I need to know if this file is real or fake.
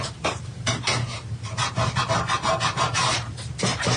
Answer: fake